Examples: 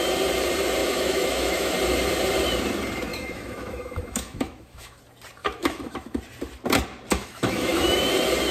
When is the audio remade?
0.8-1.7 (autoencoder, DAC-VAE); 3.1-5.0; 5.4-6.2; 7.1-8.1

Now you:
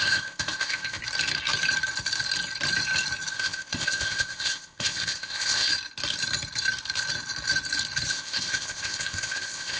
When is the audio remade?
0.0-1.0 (codec, ZipCodec); 3.3-5.7; 8.1-9.8

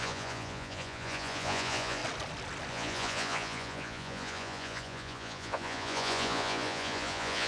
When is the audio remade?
0.0-2.0 (vocoder, Vocos); 2.7-7.5